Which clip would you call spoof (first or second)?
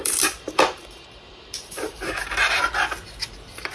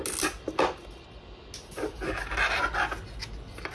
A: first